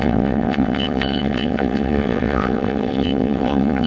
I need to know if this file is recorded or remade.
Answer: remade